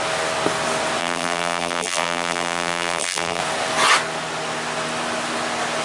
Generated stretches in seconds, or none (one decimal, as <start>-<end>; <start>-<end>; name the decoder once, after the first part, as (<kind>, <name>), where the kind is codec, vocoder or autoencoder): 1.0-3.4 (vocoder, BigVGAN v2)